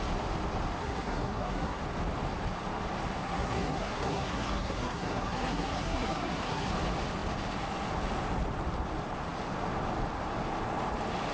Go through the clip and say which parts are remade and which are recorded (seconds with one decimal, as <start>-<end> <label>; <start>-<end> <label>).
0.0-0.8 recorded; 0.8-1.8 remade; 1.8-3.2 recorded; 3.2-6.7 remade; 6.7-11.3 recorded

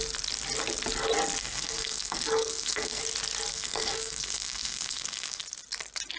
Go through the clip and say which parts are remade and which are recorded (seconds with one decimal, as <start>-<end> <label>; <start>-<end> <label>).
0.0-1.4 recorded; 1.4-3.0 remade; 3.0-3.5 recorded; 3.5-5.4 remade; 5.4-6.2 recorded

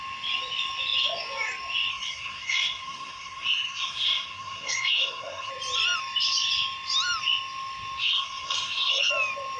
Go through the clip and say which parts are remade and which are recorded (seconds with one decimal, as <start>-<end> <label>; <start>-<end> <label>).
0.0-1.9 recorded; 1.9-5.5 remade; 5.5-8.0 recorded; 8.0-9.1 remade; 9.1-9.6 recorded

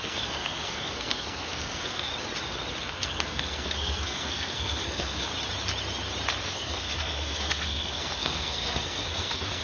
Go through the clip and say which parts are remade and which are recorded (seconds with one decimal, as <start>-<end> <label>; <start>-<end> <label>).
0.0-2.1 remade; 2.1-2.8 recorded; 2.8-5.3 remade; 5.3-6.4 recorded; 6.4-9.6 remade